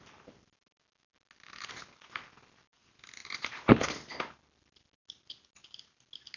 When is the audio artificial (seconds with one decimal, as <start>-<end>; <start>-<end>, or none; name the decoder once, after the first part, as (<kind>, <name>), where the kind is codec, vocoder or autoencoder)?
none